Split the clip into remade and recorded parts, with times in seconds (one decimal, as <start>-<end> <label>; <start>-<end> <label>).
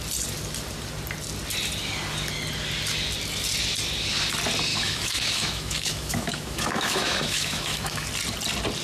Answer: 0.0-4.7 recorded; 4.7-8.1 remade; 8.1-8.8 recorded